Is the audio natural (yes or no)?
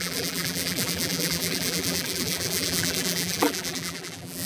no